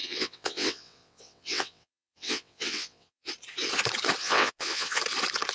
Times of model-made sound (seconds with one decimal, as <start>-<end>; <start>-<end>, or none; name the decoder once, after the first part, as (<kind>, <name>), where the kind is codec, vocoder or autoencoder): 0.0-3.3 (vocoder, WaveNeXt); 4.2-5.0